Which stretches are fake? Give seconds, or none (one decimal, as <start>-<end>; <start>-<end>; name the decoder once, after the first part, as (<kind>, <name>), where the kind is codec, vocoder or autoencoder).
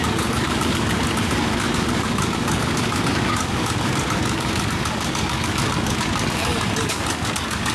0.0-7.7 (codec, DAC)